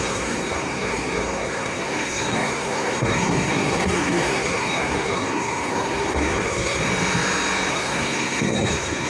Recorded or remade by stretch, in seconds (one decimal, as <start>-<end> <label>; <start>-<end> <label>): 0.0-6.9 remade; 6.9-7.7 recorded; 7.7-9.1 remade